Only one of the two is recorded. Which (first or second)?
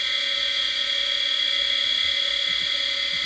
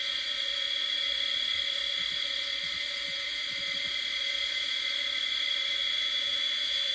first